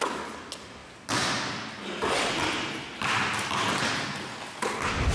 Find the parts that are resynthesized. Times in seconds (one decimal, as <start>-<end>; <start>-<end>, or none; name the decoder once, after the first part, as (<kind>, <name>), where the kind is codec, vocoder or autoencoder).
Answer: none